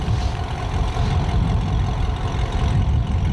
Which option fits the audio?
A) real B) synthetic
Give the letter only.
A